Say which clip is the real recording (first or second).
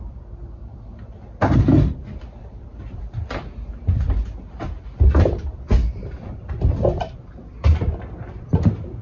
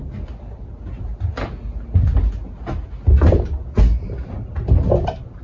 second